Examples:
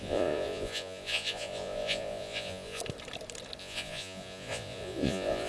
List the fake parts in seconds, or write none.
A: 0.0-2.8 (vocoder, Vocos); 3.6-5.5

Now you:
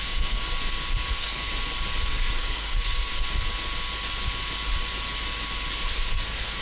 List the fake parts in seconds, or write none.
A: 0.0-0.4 (codec, SNAC); 1.1-1.5; 2.1-3.1; 5.7-6.6

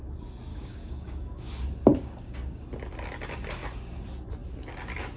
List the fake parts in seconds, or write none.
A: 0.5-1.5 (codec, DAC); 1.9-2.6

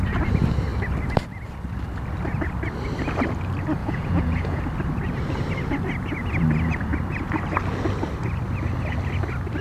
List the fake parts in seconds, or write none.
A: 3.8-4.6 (vocoder, Vocos)

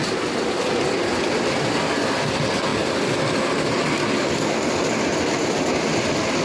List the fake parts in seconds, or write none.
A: none